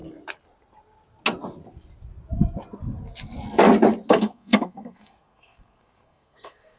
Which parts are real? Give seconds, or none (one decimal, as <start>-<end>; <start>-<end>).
0.0-4.1